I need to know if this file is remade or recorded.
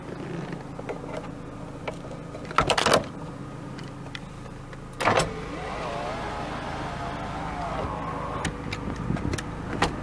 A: recorded